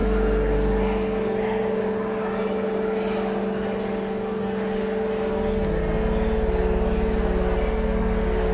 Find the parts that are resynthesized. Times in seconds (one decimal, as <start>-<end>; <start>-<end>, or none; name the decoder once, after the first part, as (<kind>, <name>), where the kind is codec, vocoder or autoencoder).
none